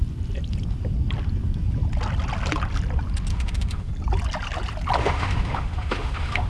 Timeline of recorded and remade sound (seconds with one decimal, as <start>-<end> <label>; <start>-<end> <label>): 0.0-3.3 recorded; 3.3-3.9 remade; 3.9-5.0 recorded; 5.0-6.5 remade